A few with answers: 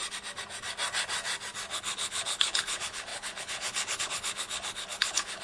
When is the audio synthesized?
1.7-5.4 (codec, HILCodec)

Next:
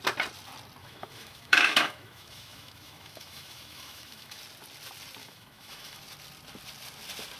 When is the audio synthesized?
0.8-4.4 (autoencoder, DAC-VAE); 5.2-6.0

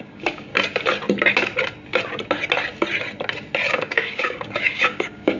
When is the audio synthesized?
0.0-0.5 (codec, DAC); 3.7-5.4

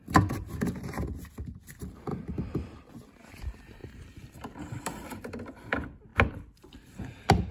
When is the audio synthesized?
3.8-5.4 (vocoder, BigVGAN v2); 6.1-7.0

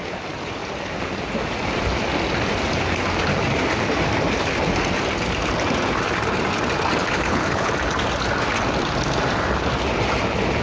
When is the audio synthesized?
7.0-7.7 (codec, HILCodec)

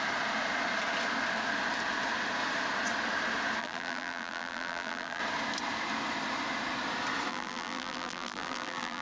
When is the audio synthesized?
3.6-5.2 (vocoder, BigVGAN v2); 7.3-9.0

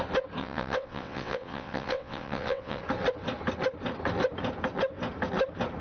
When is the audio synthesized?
0.4-2.8 (vocoder, WaveNeXt)

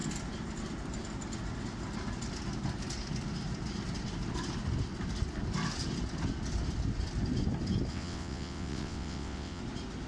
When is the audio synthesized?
7.9-9.6 (vocoder, WaveNeXt)